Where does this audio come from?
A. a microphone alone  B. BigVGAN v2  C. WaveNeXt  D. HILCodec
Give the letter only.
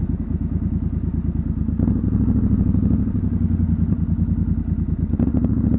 A